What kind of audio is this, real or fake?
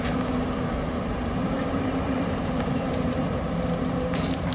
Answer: fake